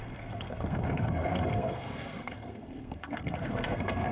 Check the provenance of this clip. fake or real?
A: fake